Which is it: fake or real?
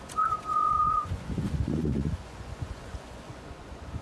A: fake